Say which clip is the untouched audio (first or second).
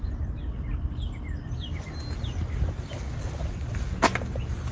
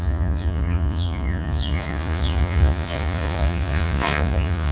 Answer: first